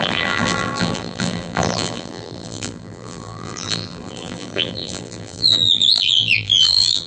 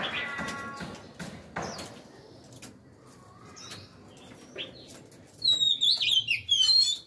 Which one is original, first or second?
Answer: second